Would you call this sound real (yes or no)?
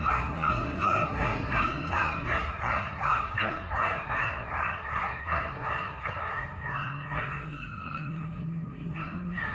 no